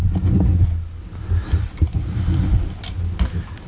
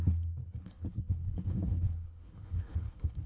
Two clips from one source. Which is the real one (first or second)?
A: first